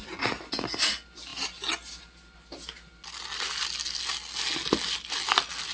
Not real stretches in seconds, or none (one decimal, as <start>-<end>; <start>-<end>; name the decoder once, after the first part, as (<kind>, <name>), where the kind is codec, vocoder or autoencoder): none